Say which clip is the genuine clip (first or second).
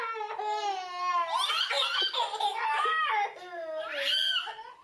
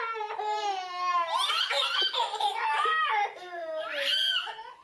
first